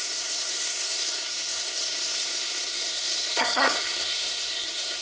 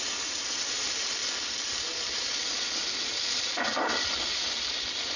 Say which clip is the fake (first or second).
first